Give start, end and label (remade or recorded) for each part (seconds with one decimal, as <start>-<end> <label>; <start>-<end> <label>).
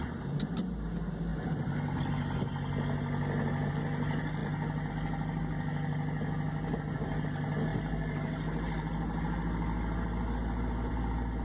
0.0-11.4 recorded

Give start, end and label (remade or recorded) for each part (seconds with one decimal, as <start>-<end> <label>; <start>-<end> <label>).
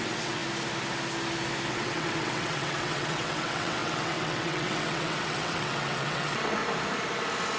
0.0-0.4 remade; 0.4-1.7 recorded; 1.7-6.6 remade; 6.6-7.6 recorded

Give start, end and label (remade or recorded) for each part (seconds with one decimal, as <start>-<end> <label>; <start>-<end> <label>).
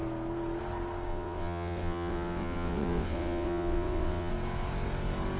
0.0-1.1 recorded; 1.1-4.3 remade; 4.3-5.4 recorded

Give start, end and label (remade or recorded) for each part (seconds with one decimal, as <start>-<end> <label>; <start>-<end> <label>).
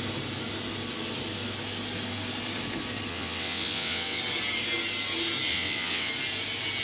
0.0-3.1 recorded; 3.1-4.2 remade; 4.2-5.5 recorded; 5.5-6.1 remade; 6.1-6.8 recorded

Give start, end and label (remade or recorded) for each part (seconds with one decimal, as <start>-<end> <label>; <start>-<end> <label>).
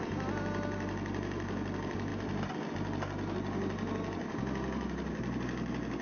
0.0-6.0 recorded